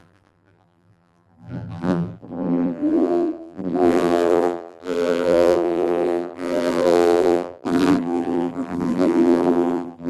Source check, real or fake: fake